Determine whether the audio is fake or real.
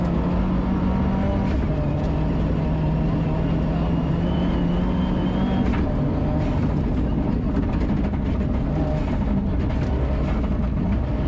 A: real